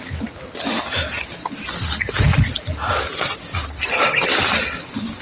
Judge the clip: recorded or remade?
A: recorded